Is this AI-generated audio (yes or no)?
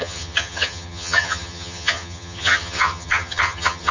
yes